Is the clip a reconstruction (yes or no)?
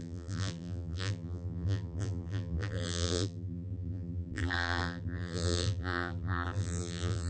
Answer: yes